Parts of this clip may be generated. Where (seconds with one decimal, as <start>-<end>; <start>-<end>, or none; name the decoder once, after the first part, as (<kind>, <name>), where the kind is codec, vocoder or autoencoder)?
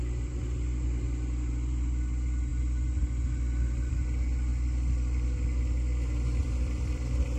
6.4-7.4 (vocoder, BigVGAN v2)